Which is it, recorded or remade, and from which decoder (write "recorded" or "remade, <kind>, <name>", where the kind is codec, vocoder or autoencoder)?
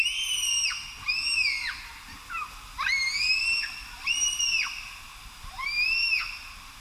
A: recorded